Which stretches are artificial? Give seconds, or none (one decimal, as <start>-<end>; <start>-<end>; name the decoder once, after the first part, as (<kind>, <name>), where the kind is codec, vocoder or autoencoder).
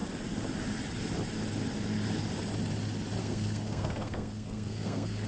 3.2-5.3 (codec, SNAC)